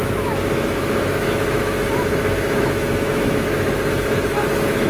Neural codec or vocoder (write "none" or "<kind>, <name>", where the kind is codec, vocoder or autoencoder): autoencoder, DAC-VAE